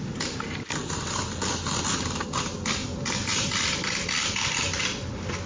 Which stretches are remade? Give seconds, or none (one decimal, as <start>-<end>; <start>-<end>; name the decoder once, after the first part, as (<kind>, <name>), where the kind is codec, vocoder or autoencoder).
none